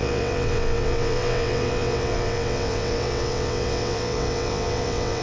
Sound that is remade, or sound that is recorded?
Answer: remade